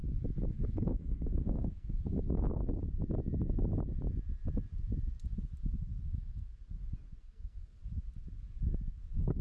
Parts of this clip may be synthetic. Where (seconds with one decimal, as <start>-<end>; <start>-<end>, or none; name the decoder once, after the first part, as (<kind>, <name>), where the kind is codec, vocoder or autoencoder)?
0.5-2.6 (codec, SNAC); 6.0-6.5; 7.2-7.8; 8.9-9.4